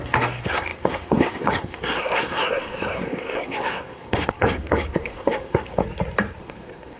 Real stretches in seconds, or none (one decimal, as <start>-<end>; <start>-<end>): 5.8-6.4